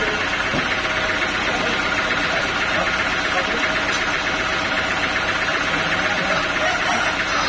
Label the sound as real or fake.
real